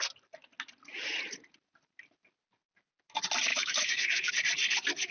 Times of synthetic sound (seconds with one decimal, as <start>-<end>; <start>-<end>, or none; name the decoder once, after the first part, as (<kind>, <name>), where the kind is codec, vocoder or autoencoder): 3.5-4.3 (autoencoder, DAC-VAE)